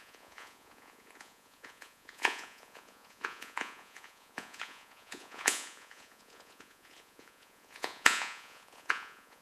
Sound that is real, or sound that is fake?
fake